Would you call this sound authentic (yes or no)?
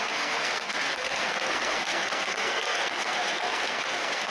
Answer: no